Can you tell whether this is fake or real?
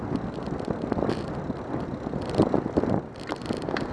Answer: real